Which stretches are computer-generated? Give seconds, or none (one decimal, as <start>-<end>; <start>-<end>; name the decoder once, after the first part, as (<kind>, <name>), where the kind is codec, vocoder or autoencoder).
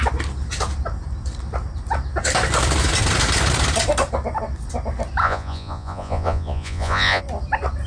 5.2-7.2 (vocoder, Vocos)